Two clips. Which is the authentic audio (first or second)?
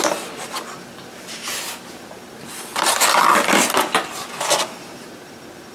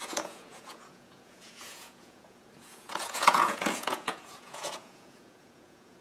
first